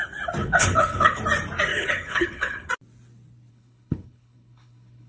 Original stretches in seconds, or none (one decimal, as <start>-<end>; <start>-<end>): 0.0-0.4; 1.2-1.7; 2.7-3.5